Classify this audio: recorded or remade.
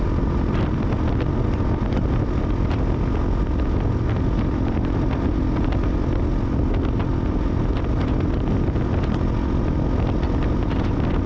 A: recorded